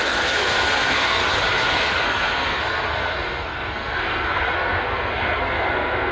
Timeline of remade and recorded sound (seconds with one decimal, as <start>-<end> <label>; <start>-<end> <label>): 0.0-1.2 remade; 1.2-1.7 recorded; 1.7-6.1 remade